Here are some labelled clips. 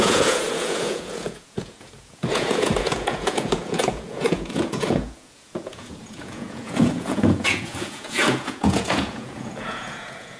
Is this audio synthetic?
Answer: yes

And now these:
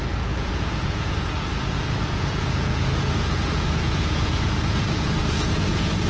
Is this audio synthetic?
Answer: yes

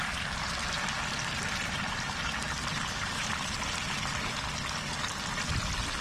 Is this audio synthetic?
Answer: no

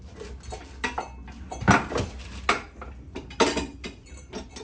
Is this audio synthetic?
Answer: no